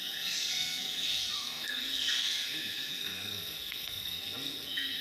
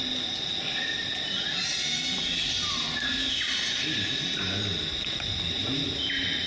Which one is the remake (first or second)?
first